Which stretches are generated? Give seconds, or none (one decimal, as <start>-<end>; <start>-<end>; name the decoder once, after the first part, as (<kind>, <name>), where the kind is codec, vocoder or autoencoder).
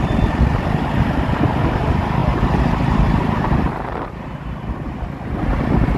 none